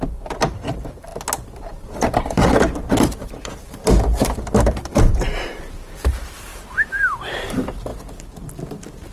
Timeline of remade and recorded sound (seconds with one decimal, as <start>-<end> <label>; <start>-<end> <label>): 0.0-1.1 remade; 1.1-1.6 recorded; 1.6-7.9 remade; 7.9-9.1 recorded